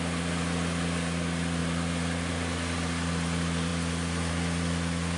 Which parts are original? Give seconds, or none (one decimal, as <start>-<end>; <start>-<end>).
0.0-5.2